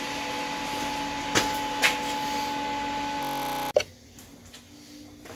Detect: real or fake real